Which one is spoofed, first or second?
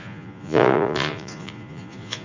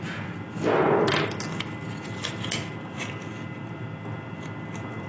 first